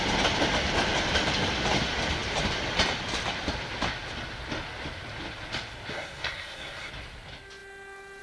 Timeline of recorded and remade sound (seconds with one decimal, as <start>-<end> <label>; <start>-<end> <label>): 0.0-5.9 recorded; 5.9-6.9 remade; 6.9-8.2 recorded